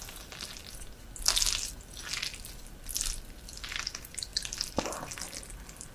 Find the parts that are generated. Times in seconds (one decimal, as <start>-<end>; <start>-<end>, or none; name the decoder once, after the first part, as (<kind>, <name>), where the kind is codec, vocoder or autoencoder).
0.0-0.6 (vocoder, BigVGAN v2); 2.1-5.9